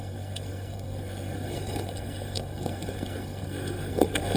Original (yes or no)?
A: no